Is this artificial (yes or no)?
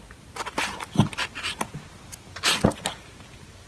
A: no